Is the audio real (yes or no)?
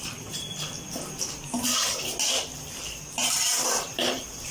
yes